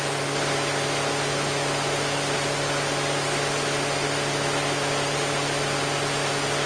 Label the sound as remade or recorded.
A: recorded